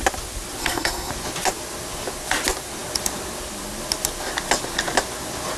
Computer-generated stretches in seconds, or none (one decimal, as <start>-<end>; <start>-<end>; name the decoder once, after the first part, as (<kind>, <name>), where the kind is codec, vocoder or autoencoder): 0.6-1.1 (codec, SNAC)